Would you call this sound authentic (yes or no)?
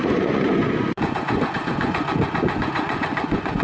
no